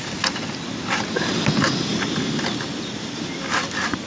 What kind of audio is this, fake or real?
real